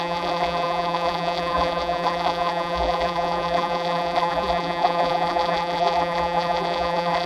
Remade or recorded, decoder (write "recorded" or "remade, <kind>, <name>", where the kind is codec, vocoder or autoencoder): remade, vocoder, BigVGAN v2